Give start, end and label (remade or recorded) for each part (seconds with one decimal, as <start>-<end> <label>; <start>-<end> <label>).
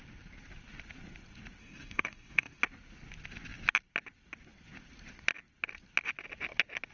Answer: 0.0-1.6 recorded; 1.6-2.6 remade; 2.6-6.9 recorded